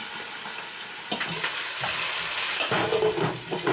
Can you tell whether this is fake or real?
real